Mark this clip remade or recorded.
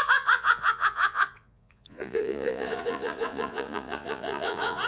remade